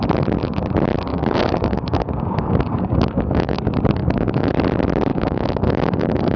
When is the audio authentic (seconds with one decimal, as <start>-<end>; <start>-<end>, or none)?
0.0-1.1; 3.6-4.0; 4.5-5.1